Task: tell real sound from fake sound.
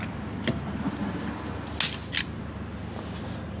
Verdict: real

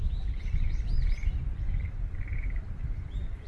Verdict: real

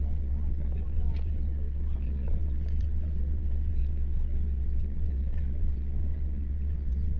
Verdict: fake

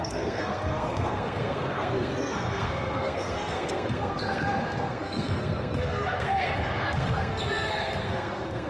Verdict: fake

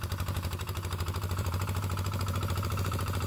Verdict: fake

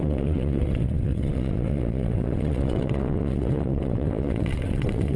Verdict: fake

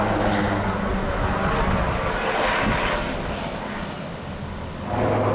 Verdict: real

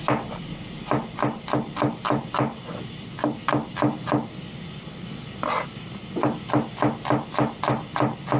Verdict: real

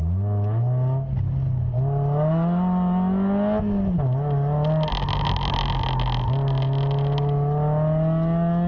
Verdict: real